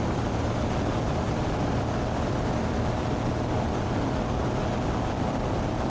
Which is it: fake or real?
fake